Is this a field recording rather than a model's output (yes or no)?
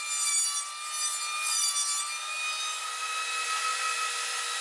yes